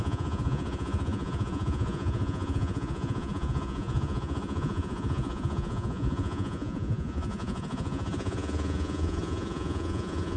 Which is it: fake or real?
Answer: fake